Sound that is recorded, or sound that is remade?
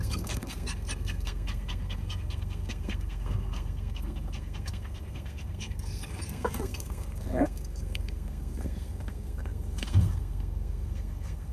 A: remade